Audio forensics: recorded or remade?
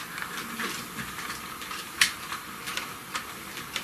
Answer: remade